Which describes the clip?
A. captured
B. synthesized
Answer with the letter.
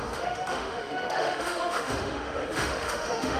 B